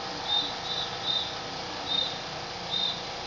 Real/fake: real